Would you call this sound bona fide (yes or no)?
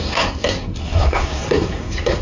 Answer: no